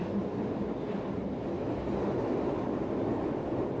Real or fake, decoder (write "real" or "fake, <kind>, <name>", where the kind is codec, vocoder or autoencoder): real